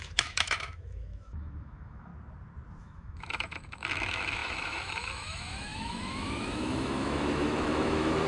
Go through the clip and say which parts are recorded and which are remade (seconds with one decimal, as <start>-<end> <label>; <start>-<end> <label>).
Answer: 0.0-2.1 remade; 2.1-2.8 recorded; 2.8-8.3 remade